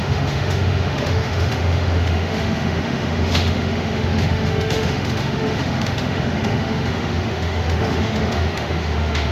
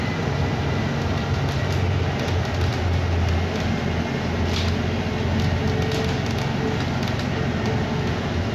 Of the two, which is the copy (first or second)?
first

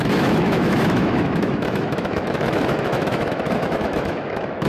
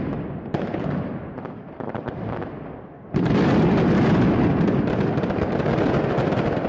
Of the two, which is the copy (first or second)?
first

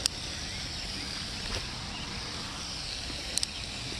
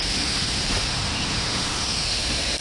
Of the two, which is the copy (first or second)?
second